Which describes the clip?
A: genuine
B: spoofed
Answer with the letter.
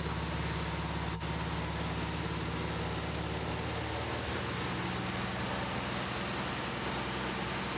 A